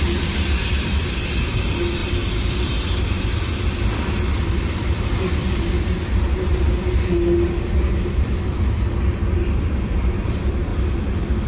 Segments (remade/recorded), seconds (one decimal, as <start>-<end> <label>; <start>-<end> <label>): 0.0-5.9 remade; 5.9-7.9 recorded; 7.9-10.7 remade; 10.7-11.5 recorded